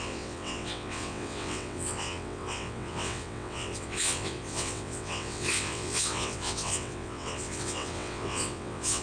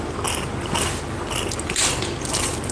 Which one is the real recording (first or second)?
second